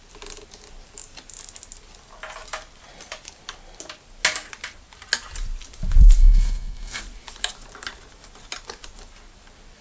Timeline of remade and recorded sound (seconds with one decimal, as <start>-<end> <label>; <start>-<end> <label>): 0.0-6.2 recorded; 6.2-7.0 remade; 7.0-9.8 recorded